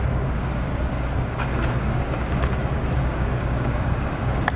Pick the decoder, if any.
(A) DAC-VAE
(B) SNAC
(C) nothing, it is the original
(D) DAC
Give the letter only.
D